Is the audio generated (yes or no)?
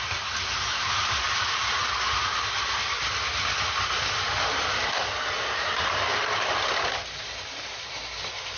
no